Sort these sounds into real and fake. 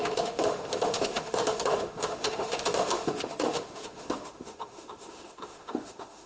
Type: fake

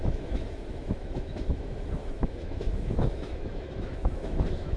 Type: fake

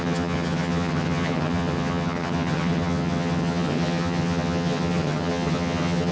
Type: fake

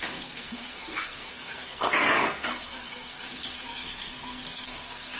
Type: fake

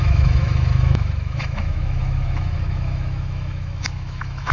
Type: fake